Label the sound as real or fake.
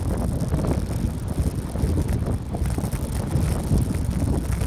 real